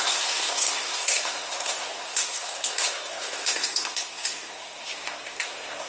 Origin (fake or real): fake